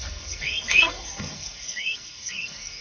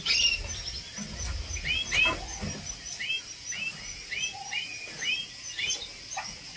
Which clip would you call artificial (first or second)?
first